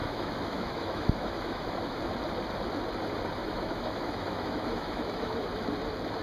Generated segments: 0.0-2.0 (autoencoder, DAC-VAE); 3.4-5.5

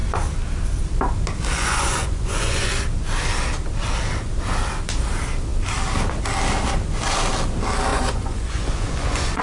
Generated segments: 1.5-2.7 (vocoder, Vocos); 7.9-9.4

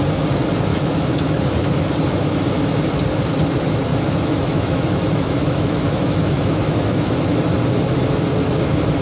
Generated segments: 0.7-1.4 (autoencoder, DAC-VAE); 3.9-7.4